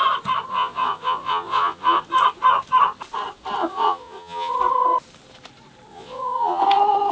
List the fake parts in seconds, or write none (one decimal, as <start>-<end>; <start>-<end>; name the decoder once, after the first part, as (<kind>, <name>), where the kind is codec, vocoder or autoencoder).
0.5-2.0 (vocoder, Vocos); 3.6-4.5; 5.9-6.6